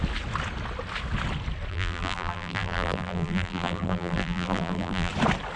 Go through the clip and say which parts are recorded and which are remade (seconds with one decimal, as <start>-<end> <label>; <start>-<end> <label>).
0.0-1.7 recorded; 1.7-5.1 remade; 5.1-5.6 recorded

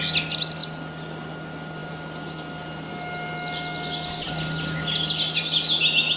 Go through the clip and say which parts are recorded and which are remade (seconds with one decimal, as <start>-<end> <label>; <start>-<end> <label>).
0.0-6.2 recorded

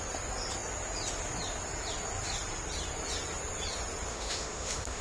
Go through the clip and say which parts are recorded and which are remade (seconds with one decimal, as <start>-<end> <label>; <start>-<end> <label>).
0.0-4.1 recorded; 4.1-5.0 remade

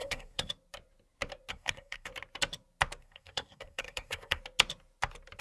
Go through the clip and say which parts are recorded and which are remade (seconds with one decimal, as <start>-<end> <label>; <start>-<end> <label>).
0.0-0.5 remade; 0.5-1.5 recorded; 1.5-2.1 remade; 2.1-3.0 recorded; 3.0-4.4 remade; 4.4-5.4 recorded